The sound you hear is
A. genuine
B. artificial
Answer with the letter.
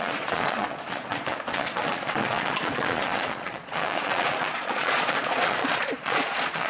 B